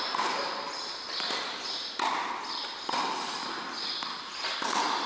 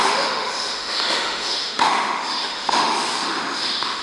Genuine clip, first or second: first